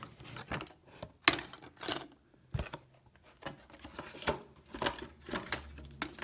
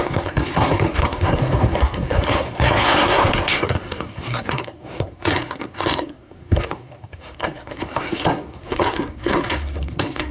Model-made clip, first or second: second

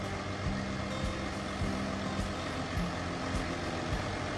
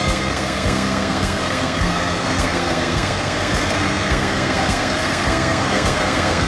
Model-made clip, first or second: second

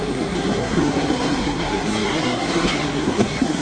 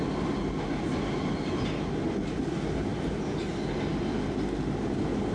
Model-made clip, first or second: first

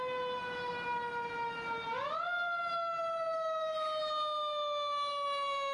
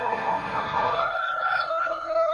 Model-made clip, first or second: second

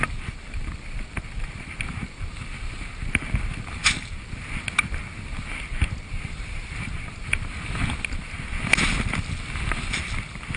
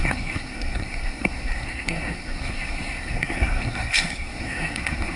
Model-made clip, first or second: second